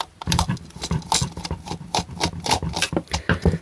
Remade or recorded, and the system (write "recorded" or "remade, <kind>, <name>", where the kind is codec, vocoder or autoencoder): recorded